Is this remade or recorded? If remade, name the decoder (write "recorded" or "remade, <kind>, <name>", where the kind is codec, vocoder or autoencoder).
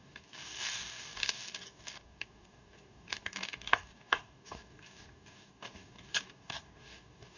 remade, codec, DAC